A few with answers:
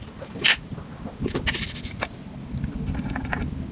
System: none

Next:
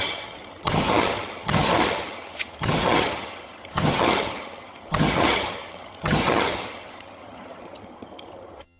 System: vocoder, HiFi-GAN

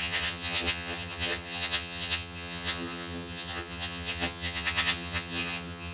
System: vocoder, HiFi-GAN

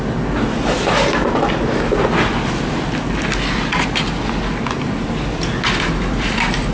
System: none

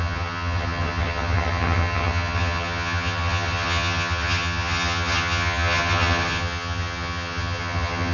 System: vocoder, HiFi-GAN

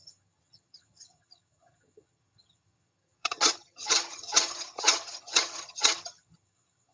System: vocoder, HiFi-GAN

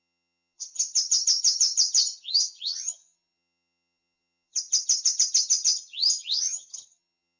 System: vocoder, HiFi-GAN